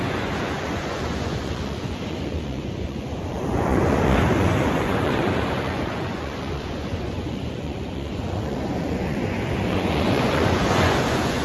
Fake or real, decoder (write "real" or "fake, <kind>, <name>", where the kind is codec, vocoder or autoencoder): fake, vocoder, Vocos